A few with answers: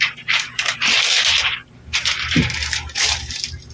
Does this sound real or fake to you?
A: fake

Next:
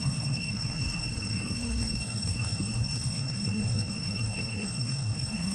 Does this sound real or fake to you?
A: fake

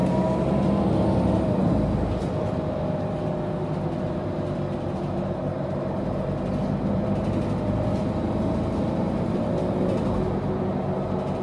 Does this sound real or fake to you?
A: real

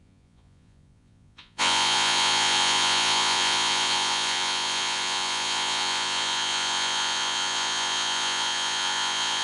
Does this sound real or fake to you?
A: fake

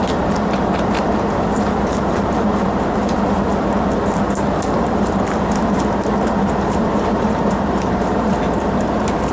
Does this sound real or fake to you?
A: fake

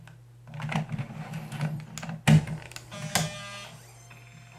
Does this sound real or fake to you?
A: real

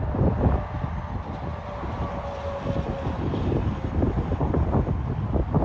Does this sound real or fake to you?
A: real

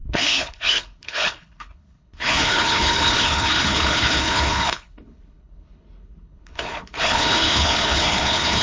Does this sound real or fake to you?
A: fake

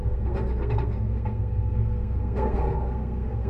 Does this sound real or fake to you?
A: fake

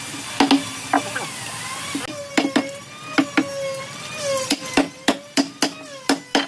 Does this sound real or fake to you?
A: real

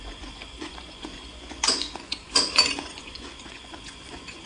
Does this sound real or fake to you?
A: fake